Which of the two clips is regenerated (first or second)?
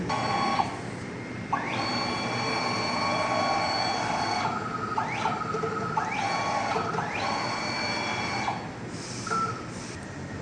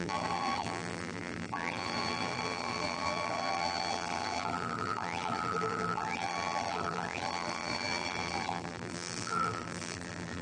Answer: second